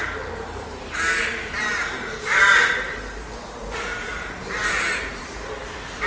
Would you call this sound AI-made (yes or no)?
yes